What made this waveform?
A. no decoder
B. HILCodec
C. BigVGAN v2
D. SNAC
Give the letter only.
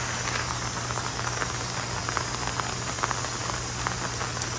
A